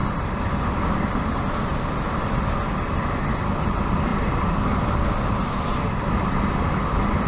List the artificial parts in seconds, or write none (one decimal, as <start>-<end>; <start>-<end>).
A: none